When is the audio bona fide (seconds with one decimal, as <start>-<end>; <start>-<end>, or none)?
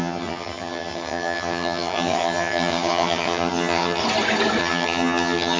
4.0-4.6